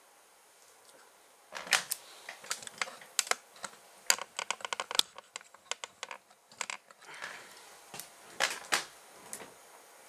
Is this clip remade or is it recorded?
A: recorded